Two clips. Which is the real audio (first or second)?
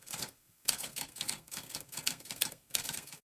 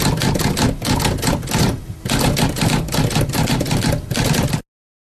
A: second